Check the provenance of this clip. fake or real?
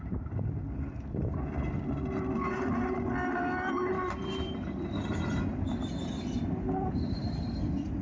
real